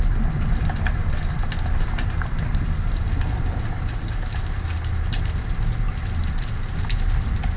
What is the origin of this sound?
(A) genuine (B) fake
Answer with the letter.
A